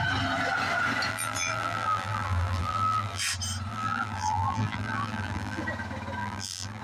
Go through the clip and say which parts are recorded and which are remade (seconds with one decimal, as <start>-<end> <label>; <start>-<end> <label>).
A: 0.0-1.1 recorded; 1.1-3.2 remade; 3.2-3.7 recorded; 3.7-5.6 remade; 5.6-6.2 recorded; 6.2-6.8 remade